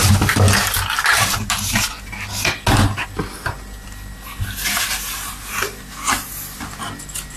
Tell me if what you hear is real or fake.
real